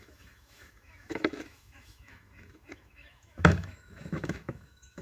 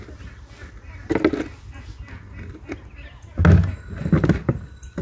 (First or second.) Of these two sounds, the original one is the second